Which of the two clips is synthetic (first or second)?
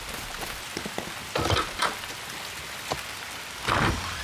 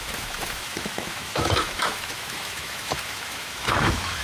second